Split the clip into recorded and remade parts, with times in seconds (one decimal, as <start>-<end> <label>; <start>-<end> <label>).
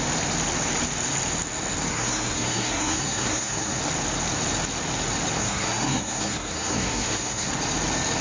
0.0-1.9 recorded; 1.9-3.8 remade; 3.8-5.4 recorded; 5.4-7.5 remade; 7.5-8.2 recorded